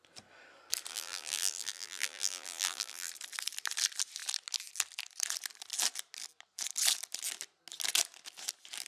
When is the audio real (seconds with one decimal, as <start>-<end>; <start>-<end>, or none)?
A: 0.0-0.9; 3.1-8.9